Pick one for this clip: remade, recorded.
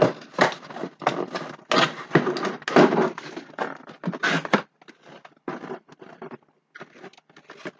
recorded